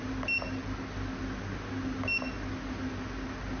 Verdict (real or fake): real